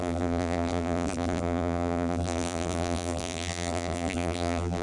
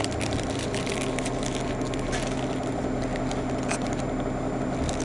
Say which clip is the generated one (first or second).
first